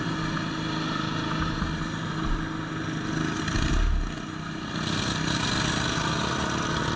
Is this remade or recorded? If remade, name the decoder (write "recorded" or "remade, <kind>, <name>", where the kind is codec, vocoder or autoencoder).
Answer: recorded